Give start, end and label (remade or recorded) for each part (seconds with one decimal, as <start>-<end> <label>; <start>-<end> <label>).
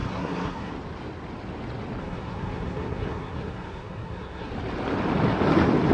0.0-0.7 remade; 0.7-2.0 recorded; 2.0-4.5 remade; 4.5-5.9 recorded